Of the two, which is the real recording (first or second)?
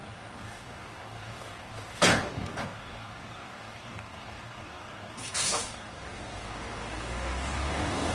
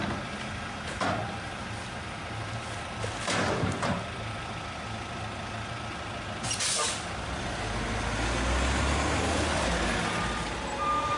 second